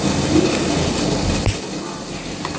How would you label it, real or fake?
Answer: real